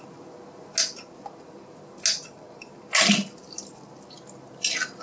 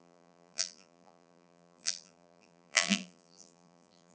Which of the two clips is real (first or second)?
first